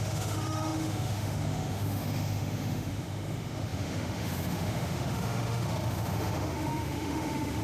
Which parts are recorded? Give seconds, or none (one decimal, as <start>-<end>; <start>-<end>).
none

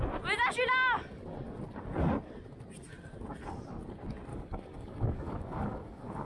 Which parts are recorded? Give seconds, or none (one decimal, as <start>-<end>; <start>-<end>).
0.0-4.3

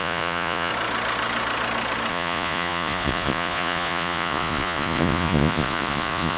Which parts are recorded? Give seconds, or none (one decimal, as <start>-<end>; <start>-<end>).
0.7-2.1

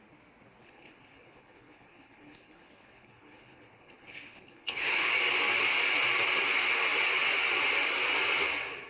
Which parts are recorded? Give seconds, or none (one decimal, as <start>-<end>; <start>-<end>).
0.0-0.6; 5.1-8.9

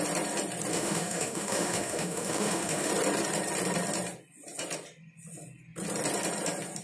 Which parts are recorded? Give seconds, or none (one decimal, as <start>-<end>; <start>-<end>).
0.0-0.7; 2.9-6.8